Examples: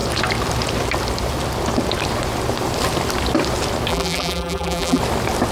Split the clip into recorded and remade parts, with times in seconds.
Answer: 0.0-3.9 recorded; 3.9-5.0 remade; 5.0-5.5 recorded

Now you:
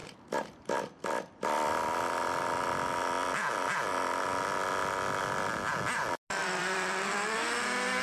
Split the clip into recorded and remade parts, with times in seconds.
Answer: 0.0-6.4 recorded; 6.4-7.1 remade; 7.1-8.0 recorded